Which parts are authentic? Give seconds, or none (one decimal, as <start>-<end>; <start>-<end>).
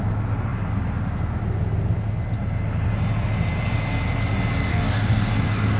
0.0-4.7